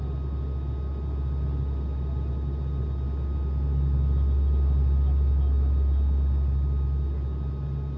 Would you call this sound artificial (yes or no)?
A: no